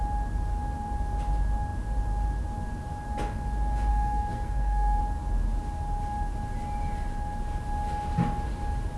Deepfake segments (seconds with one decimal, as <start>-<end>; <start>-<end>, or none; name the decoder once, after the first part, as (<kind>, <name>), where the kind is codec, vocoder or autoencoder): 3.9-5.0 (codec, SNAC)